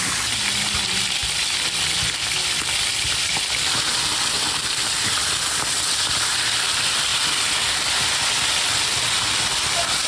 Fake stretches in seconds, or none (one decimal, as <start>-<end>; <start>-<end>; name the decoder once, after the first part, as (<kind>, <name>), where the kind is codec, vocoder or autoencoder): 0.0-1.2 (vocoder, BigVGAN v2); 2.8-10.1